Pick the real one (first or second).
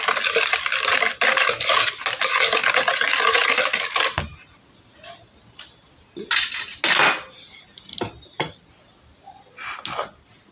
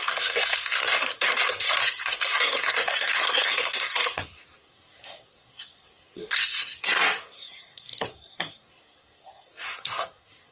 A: first